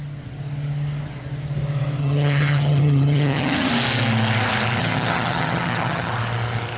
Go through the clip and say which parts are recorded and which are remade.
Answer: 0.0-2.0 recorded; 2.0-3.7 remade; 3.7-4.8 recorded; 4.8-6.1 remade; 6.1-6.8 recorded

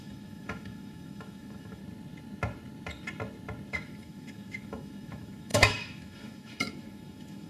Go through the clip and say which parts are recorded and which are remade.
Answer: 0.0-1.8 remade; 1.8-3.7 recorded; 3.7-7.5 remade

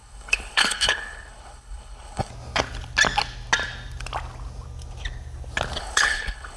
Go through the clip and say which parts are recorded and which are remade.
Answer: 0.0-2.3 remade; 2.3-5.8 recorded; 5.8-6.6 remade

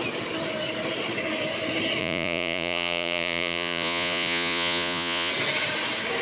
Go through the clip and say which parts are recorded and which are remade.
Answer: 0.0-2.0 recorded; 2.0-5.3 remade; 5.3-6.2 recorded